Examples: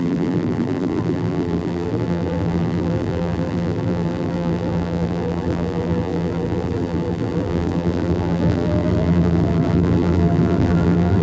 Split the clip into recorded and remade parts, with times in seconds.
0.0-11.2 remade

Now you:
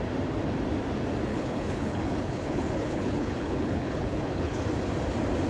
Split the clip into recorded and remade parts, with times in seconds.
0.0-1.3 recorded; 1.3-4.6 remade; 4.6-5.5 recorded